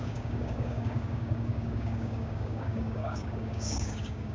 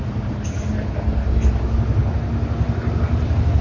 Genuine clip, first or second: second